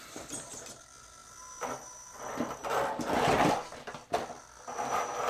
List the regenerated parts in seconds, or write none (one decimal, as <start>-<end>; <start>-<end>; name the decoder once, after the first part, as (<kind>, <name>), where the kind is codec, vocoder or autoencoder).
none

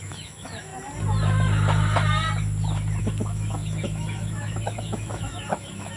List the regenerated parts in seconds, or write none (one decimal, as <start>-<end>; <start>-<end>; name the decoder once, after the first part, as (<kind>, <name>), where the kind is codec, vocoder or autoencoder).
0.0-0.7 (autoencoder, DAC-VAE); 3.0-6.0

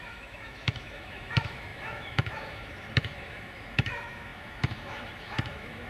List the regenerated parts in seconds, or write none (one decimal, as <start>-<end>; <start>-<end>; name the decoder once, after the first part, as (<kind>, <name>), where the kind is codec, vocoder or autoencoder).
0.0-5.9 (autoencoder, DAC-VAE)

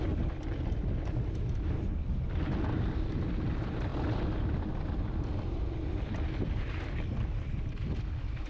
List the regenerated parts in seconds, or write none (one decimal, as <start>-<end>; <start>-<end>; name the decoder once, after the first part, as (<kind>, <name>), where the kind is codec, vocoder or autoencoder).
none

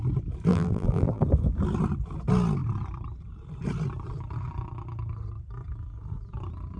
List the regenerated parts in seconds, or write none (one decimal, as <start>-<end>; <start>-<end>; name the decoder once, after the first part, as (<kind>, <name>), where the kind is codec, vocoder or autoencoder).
0.5-1.2 (vocoder, BigVGAN v2)

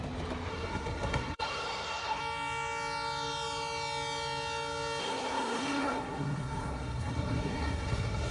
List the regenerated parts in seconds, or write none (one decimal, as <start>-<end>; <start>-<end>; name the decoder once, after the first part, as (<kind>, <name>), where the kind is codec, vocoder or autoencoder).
0.5-2.2 (codec, SNAC); 5.0-8.3

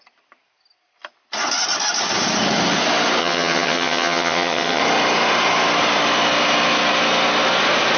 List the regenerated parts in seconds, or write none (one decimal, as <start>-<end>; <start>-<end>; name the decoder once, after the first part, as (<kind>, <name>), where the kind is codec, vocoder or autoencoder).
3.2-4.8 (vocoder, HiFi-GAN)

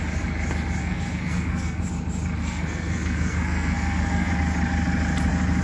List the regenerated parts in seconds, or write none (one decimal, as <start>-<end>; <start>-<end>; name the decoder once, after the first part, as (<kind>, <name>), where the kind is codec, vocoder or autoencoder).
0.8-1.8 (codec, SNAC); 2.4-4.3